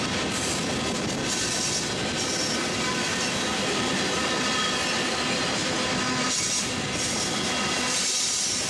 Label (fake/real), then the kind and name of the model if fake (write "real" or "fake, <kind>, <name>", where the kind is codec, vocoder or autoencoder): real